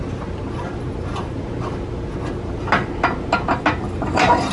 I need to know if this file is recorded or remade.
recorded